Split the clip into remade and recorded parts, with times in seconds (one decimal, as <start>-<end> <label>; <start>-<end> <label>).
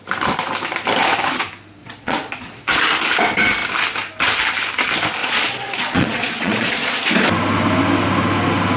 0.0-1.8 recorded; 1.8-2.8 remade; 2.8-5.2 recorded; 5.2-6.9 remade; 6.9-8.8 recorded